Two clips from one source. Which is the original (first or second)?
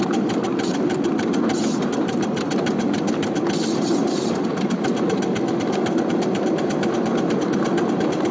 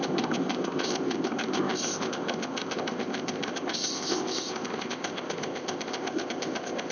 first